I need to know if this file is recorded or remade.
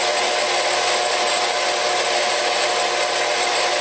recorded